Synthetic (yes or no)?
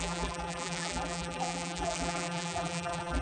yes